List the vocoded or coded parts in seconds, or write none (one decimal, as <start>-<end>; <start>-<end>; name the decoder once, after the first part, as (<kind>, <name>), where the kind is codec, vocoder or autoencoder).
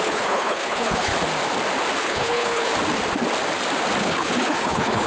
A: 0.0-1.1 (codec, HILCodec); 2.0-2.7; 4.0-5.1